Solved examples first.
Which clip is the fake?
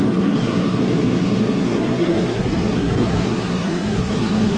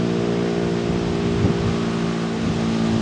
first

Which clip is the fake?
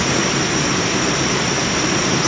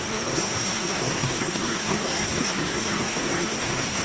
second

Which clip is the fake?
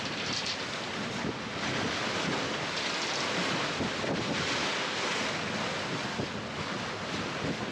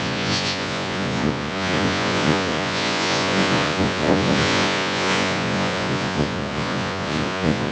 second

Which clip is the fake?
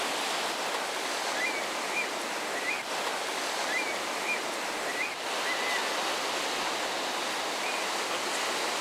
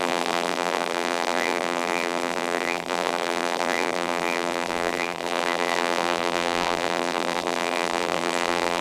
second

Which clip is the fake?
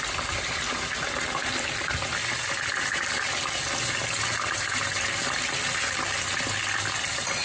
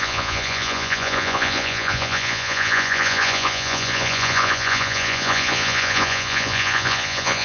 second